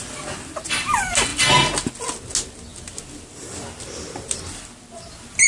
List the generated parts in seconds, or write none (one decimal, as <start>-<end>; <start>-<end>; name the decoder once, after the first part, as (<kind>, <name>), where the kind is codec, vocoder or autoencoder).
none